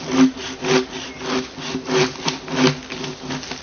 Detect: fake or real real